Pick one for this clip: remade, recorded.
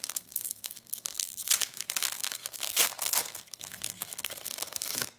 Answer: remade